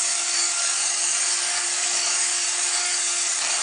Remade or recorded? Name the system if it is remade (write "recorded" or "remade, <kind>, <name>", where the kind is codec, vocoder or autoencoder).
remade, codec, DAC